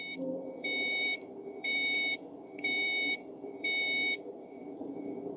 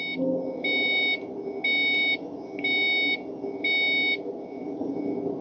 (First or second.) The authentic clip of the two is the second